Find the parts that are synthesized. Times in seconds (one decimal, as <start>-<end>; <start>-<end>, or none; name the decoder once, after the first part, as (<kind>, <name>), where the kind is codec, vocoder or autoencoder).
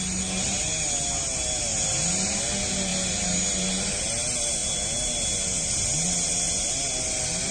none